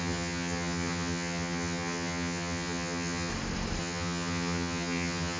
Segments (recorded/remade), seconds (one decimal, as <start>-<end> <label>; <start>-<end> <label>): 0.0-3.3 remade; 3.3-3.8 recorded; 3.8-5.4 remade